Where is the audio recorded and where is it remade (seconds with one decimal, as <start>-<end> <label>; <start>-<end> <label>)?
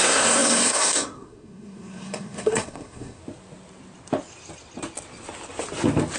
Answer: 0.0-3.2 remade; 3.2-6.2 recorded